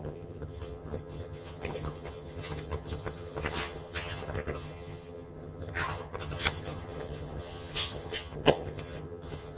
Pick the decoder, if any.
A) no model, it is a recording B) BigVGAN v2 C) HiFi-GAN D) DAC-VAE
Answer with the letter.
C